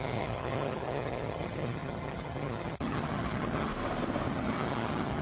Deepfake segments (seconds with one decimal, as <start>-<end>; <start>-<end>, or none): 0.0-3.7; 4.3-5.2